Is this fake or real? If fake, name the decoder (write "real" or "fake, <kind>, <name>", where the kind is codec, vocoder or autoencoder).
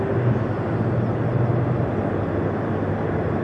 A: real